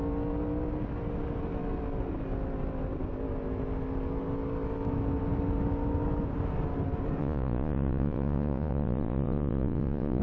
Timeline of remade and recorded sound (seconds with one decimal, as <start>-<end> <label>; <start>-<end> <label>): 0.0-7.2 recorded; 7.2-10.2 remade